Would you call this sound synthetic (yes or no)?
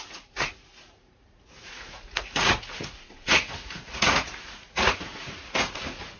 yes